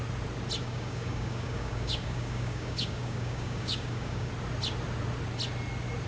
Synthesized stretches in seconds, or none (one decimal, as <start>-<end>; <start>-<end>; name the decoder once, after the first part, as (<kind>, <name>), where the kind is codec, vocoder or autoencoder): 0.6-4.3 (codec, DAC)